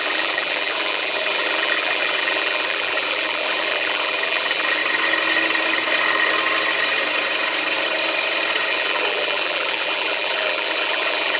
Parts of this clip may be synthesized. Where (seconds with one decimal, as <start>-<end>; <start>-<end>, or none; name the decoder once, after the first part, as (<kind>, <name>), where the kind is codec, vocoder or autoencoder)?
0.0-4.8 (vocoder, BigVGAN v2); 8.7-11.4